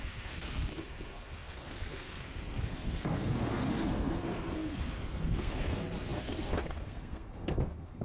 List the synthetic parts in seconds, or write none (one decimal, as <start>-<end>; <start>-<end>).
0.0-8.0